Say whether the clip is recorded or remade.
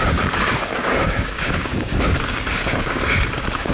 remade